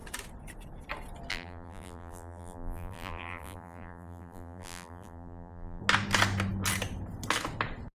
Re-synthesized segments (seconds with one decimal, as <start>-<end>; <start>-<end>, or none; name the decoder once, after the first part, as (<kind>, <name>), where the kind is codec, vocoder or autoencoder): 1.3-5.8 (vocoder, BigVGAN v2)